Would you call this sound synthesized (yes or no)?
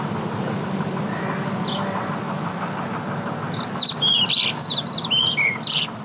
no